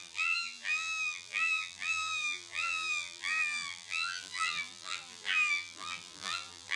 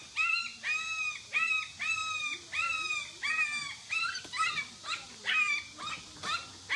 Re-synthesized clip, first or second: first